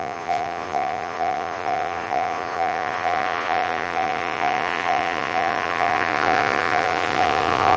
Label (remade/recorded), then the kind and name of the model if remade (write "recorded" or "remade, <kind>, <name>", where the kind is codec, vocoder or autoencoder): remade, vocoder, Vocos